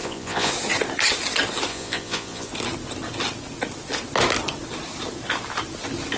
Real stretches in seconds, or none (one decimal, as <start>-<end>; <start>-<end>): 0.5-1.7; 2.5-6.2